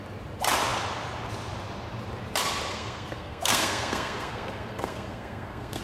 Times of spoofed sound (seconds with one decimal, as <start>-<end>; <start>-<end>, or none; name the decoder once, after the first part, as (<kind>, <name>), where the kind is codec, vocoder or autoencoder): 2.7-5.8 (codec, SNAC)